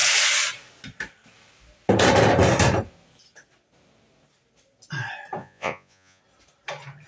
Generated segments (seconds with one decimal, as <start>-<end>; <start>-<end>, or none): 5.4-6.2